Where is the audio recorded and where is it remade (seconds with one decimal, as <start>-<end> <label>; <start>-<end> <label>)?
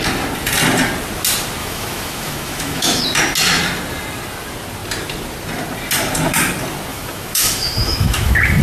0.0-1.6 recorded; 1.6-3.0 remade; 3.0-6.9 recorded; 6.9-8.6 remade